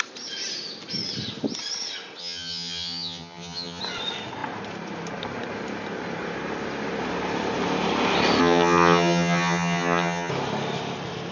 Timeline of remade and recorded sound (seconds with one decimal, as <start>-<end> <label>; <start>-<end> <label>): 0.0-2.2 recorded; 2.2-3.8 remade; 3.8-8.4 recorded; 8.4-10.3 remade; 10.3-11.3 recorded